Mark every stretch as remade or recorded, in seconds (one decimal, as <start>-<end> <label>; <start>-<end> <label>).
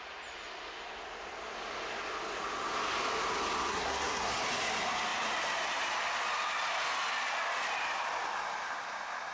0.0-3.7 recorded; 3.7-4.4 remade; 4.4-9.3 recorded